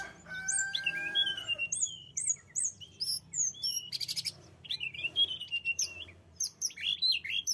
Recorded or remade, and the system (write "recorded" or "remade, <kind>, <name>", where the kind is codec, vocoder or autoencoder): remade, vocoder, BigVGAN v2